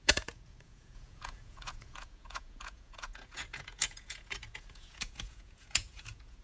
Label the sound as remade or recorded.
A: remade